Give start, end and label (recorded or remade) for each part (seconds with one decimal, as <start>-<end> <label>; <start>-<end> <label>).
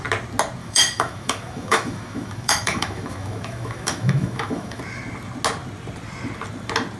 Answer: 0.0-0.6 recorded; 0.6-4.8 remade; 4.8-7.0 recorded